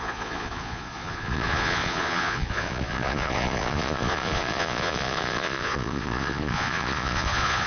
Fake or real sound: fake